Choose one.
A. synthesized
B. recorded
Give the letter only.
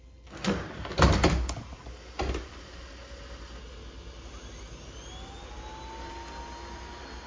B